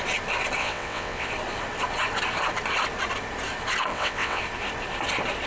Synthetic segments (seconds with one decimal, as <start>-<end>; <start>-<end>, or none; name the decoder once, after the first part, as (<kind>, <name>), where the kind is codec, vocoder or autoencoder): 0.6-1.3 (vocoder, WaveNeXt); 3.9-4.4